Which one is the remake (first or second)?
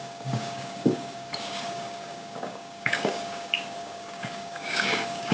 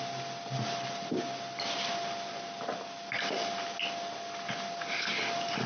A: first